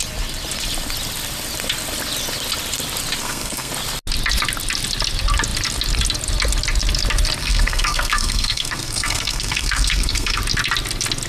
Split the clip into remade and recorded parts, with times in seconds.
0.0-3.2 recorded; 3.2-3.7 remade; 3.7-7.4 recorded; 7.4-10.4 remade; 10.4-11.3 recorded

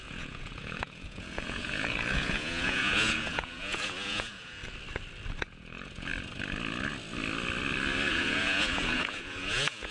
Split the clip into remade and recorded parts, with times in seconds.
0.0-4.6 remade; 4.6-5.4 recorded; 5.4-6.1 remade; 6.1-8.1 recorded; 8.1-9.9 remade

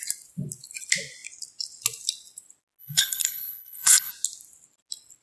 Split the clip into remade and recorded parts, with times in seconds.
0.0-2.8 recorded; 2.8-4.1 remade; 4.1-5.2 recorded

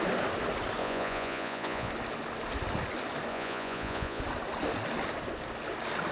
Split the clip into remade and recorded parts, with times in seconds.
0.0-0.8 recorded; 0.8-1.9 remade; 1.9-3.3 recorded; 3.3-4.2 remade; 4.2-6.1 recorded

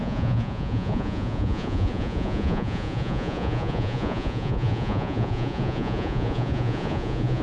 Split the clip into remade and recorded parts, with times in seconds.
0.0-7.4 remade

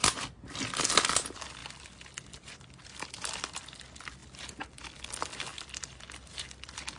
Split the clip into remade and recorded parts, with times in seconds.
0.0-0.6 recorded; 0.6-4.2 remade; 4.2-5.0 recorded; 5.0-7.0 remade